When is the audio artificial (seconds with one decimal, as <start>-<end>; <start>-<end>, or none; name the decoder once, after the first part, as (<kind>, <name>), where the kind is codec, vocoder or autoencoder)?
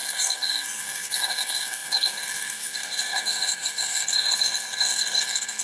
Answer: 0.0-5.6 (codec, SNAC)